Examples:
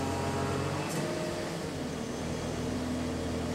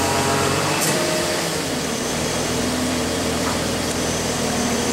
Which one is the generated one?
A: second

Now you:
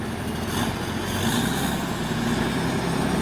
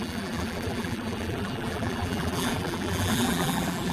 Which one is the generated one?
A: second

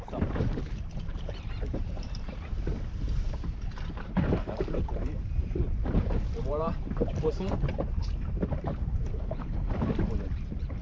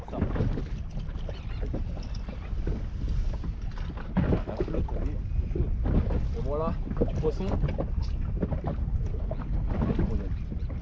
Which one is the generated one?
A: first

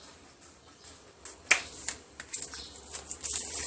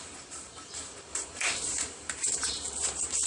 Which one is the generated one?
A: second